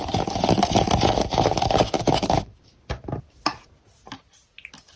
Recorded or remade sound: recorded